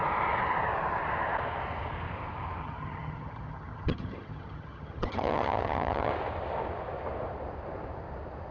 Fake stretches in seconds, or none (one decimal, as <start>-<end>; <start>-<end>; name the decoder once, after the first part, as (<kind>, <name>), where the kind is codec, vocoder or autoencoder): 2.6-6.1 (vocoder, HiFi-GAN)